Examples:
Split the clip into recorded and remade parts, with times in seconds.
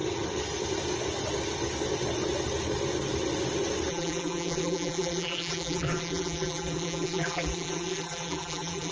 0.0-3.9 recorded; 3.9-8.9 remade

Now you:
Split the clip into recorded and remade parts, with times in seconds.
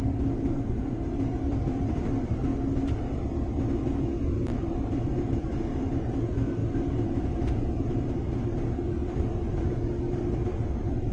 0.0-2.5 remade; 2.5-4.3 recorded; 4.3-11.1 remade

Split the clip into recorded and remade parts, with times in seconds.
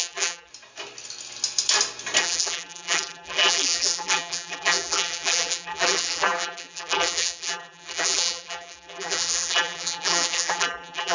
0.0-0.5 remade; 0.5-2.2 recorded; 2.2-11.1 remade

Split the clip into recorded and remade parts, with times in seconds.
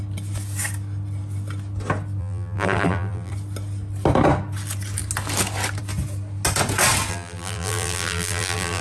0.0-2.2 recorded; 2.2-3.3 remade; 3.3-7.1 recorded; 7.1-8.8 remade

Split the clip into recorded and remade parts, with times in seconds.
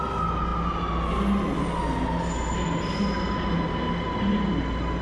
0.0-5.0 recorded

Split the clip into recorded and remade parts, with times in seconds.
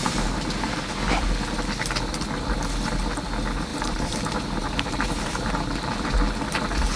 0.0-0.5 remade; 0.5-3.7 recorded; 3.7-5.5 remade; 5.5-7.0 recorded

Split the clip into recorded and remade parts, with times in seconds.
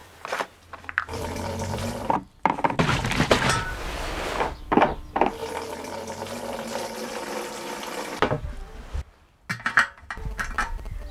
0.0-4.8 remade; 4.8-5.4 recorded; 5.4-8.2 remade; 8.2-11.1 recorded